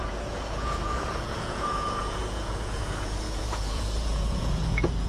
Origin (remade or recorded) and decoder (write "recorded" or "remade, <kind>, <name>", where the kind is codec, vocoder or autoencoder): remade, vocoder, Vocos